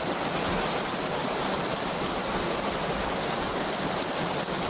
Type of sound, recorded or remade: remade